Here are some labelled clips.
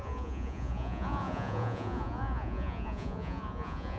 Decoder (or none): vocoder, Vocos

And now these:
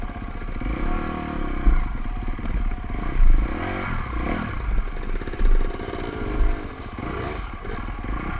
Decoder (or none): none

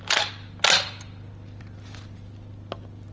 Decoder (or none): none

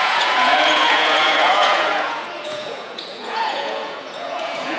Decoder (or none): vocoder, Vocos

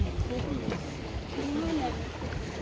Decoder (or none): none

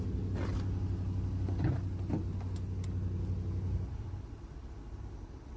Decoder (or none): none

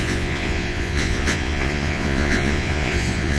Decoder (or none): vocoder, Vocos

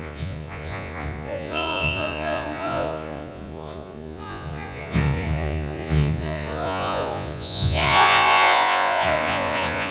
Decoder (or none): vocoder, Vocos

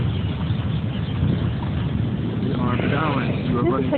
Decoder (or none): none